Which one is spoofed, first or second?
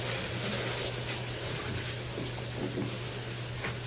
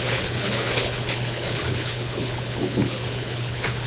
second